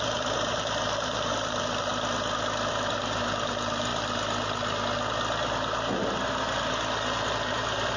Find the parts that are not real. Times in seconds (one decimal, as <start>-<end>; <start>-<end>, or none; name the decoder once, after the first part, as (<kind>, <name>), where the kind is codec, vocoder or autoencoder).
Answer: 0.0-1.9 (vocoder, BigVGAN v2); 2.7-3.9; 7.3-8.0